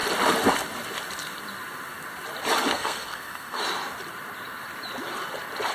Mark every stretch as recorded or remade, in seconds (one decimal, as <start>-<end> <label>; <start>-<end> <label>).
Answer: 0.0-2.7 recorded; 2.7-3.6 remade; 3.6-5.7 recorded